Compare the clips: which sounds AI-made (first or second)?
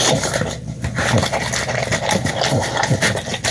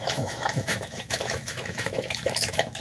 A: second